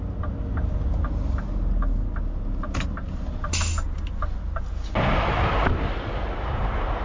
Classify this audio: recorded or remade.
recorded